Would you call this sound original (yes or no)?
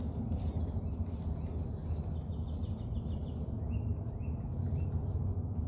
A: yes